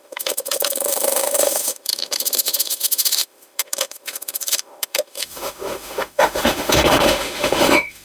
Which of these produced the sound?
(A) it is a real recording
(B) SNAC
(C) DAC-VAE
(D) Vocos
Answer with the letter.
C